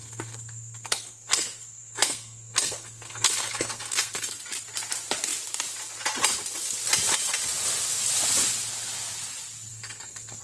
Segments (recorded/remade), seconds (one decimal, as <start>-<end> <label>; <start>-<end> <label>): 0.0-4.4 remade; 4.4-9.7 recorded; 9.7-10.4 remade